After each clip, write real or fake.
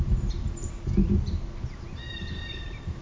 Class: real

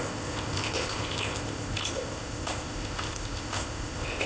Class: fake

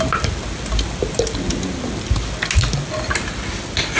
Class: real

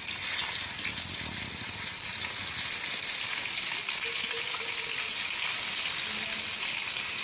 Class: real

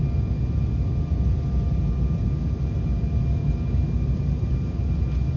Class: real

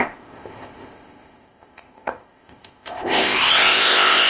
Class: fake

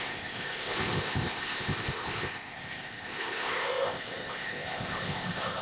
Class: fake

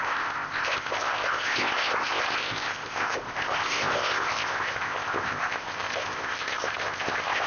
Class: fake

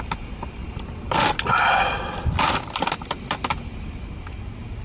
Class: real